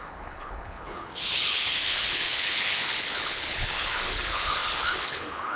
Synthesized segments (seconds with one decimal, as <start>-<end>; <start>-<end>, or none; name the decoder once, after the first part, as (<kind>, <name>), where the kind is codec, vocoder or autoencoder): 0.0-5.6 (codec, HILCodec)